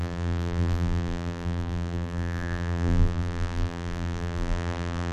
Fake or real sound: fake